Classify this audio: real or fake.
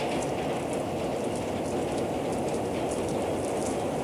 real